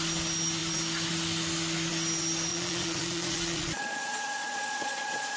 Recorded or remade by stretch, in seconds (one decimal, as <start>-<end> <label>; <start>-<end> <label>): 0.0-2.5 recorded; 2.5-5.4 remade